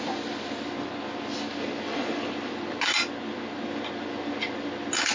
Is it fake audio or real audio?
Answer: real